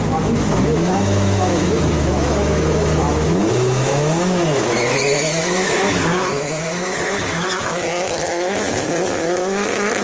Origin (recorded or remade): remade